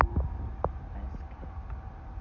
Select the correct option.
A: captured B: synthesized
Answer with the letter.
A